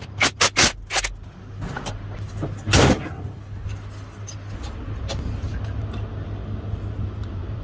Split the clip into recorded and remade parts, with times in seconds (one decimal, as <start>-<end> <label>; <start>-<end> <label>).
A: 0.0-6.4 recorded; 6.4-7.6 remade